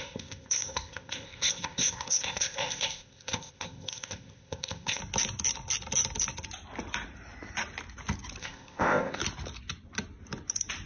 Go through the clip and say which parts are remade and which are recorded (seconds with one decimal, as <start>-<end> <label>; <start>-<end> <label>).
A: 0.0-5.0 remade; 5.0-8.4 recorded; 8.4-9.2 remade; 9.2-10.9 recorded